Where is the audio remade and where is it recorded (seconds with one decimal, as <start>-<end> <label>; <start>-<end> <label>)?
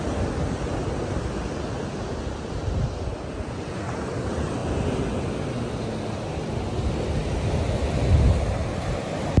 0.0-9.4 recorded